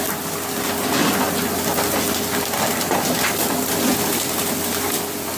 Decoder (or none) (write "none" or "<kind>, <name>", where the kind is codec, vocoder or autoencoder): none